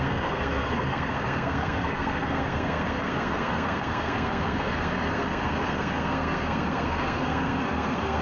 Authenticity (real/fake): fake